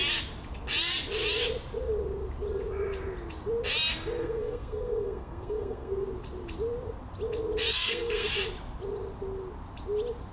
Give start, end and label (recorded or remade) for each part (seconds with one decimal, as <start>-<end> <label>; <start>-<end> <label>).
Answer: 0.0-4.2 recorded; 4.2-5.9 remade; 5.9-7.7 recorded; 7.7-8.3 remade; 8.3-10.3 recorded